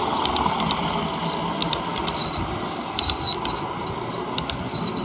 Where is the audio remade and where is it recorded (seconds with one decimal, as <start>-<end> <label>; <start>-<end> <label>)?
0.0-1.9 recorded; 1.9-5.0 remade